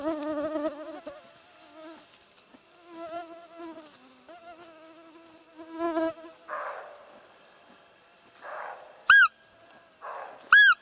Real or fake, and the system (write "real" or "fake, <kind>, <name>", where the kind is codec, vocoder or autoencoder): real